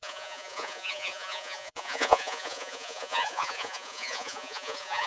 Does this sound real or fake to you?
fake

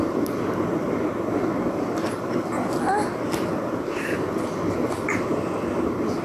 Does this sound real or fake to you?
real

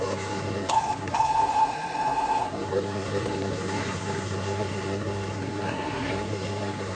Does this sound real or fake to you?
fake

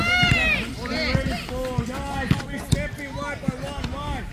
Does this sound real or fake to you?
real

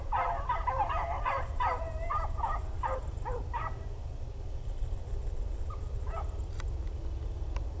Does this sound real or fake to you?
real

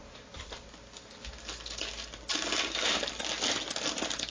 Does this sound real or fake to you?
real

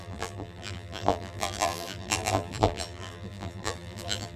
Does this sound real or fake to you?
fake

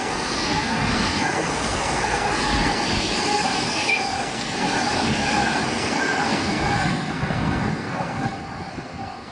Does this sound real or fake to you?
fake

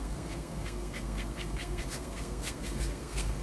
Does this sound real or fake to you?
fake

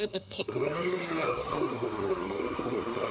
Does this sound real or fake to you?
fake